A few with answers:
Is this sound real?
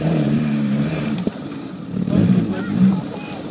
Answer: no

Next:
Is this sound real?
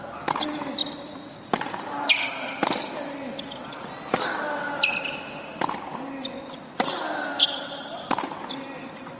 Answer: yes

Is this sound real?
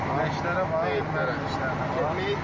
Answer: yes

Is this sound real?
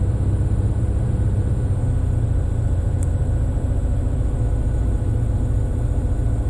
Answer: yes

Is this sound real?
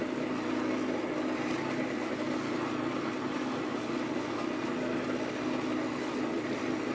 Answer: yes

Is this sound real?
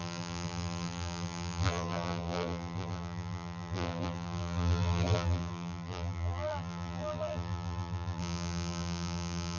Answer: no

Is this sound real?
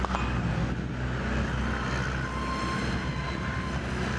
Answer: yes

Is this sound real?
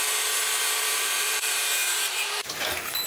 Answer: no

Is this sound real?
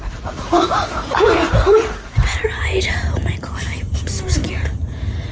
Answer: no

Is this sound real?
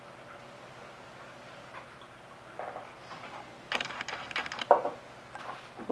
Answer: yes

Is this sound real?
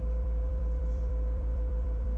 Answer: no